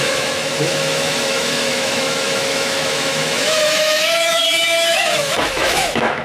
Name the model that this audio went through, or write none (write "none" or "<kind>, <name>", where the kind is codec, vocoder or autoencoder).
autoencoder, DAC-VAE